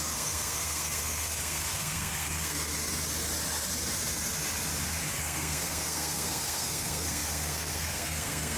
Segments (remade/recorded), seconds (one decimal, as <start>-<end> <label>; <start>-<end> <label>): 0.0-2.7 remade; 2.7-5.1 recorded; 5.1-8.6 remade